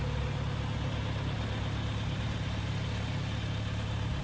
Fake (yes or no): no